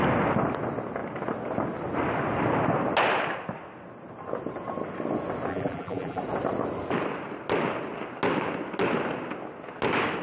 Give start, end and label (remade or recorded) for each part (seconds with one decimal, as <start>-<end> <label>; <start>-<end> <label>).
0.0-5.5 recorded; 5.5-6.2 remade; 6.2-10.2 recorded